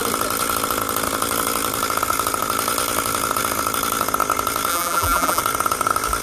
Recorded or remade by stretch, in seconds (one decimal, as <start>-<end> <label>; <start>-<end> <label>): 0.0-4.7 recorded; 4.7-5.4 remade; 5.4-6.2 recorded